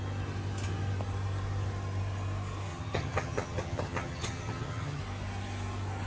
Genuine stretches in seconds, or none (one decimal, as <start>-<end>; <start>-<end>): 0.0-2.7; 5.0-6.1